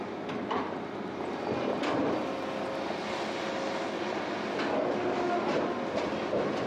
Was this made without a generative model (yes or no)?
yes